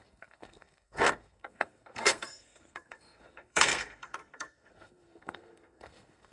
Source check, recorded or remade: remade